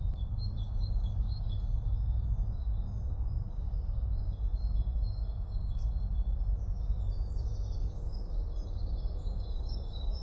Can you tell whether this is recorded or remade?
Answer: remade